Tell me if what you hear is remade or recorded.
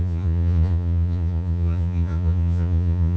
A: remade